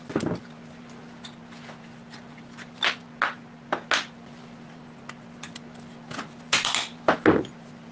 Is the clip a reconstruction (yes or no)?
no